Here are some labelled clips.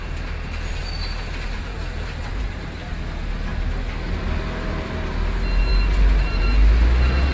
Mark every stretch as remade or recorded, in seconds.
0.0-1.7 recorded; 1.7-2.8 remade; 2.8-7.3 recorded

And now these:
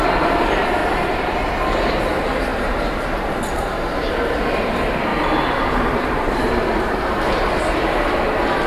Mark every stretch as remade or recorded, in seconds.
0.0-2.5 recorded; 2.5-4.1 remade; 4.1-5.1 recorded; 5.1-7.6 remade; 7.6-8.7 recorded

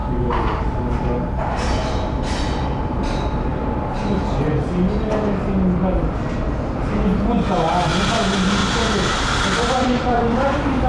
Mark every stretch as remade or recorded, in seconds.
0.0-1.0 remade; 1.0-3.5 recorded; 3.5-4.2 remade; 4.2-8.6 recorded; 8.6-10.9 remade

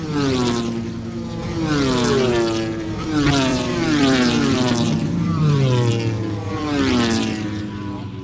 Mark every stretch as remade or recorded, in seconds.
0.0-3.5 recorded; 3.5-5.9 remade; 5.9-8.2 recorded

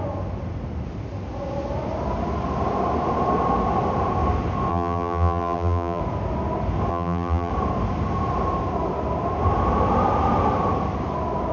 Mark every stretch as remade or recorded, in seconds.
0.0-4.7 recorded; 4.7-6.0 remade; 6.0-6.9 recorded; 6.9-7.5 remade; 7.5-11.5 recorded

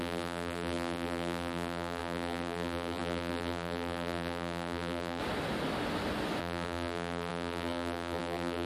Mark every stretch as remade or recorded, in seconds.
0.0-5.2 remade; 5.2-6.4 recorded; 6.4-8.7 remade

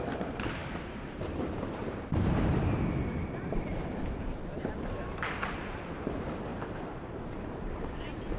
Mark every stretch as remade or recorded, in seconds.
0.0-2.5 remade; 2.5-4.0 recorded; 4.0-8.4 remade